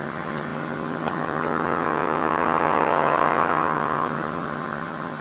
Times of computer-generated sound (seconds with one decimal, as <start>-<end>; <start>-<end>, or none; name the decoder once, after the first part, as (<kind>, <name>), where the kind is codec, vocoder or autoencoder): 0.0-5.2 (vocoder, HiFi-GAN)